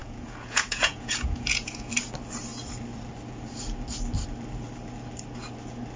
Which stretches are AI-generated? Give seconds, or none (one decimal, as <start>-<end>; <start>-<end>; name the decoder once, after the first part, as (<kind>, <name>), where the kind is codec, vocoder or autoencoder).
0.0-1.9 (vocoder, Vocos)